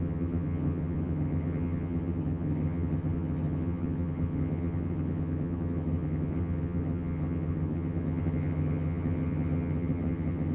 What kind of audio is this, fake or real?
fake